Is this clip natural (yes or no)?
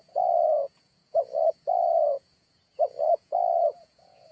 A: no